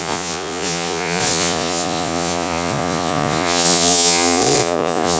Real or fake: fake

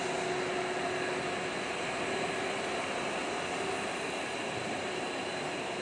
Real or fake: real